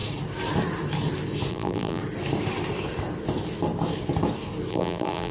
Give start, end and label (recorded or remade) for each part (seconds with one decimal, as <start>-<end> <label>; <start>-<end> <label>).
0.0-1.5 recorded; 1.5-2.0 remade; 2.0-4.7 recorded; 4.7-5.3 remade